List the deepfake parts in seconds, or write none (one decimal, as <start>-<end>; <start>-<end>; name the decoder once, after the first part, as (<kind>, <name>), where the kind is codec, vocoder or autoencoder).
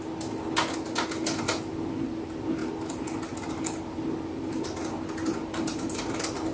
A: none